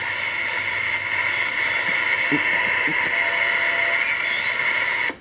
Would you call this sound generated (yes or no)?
no